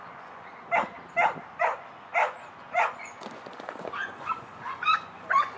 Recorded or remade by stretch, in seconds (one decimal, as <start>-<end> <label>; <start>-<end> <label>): 0.0-0.5 remade; 0.5-1.6 recorded; 1.6-5.6 remade